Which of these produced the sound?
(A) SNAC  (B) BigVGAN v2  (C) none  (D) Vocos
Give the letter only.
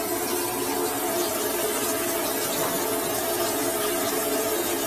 C